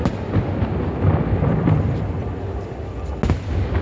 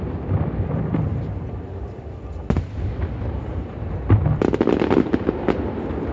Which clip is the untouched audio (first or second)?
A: first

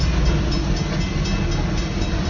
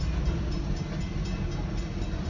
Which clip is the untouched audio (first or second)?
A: first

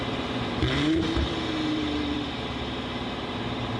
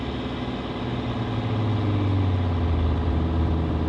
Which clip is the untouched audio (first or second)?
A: second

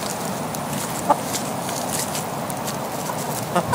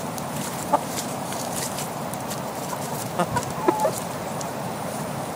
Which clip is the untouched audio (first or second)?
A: first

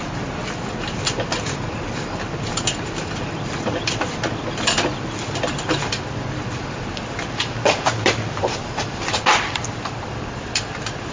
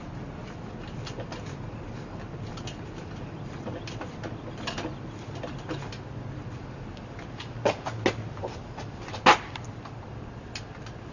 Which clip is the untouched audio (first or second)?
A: second